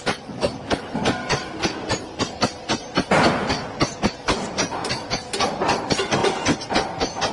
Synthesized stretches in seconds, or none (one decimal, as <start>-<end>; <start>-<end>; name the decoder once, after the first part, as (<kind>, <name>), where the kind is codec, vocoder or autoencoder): none